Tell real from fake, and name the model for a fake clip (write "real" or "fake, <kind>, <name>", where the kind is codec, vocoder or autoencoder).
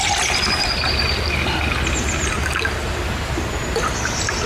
real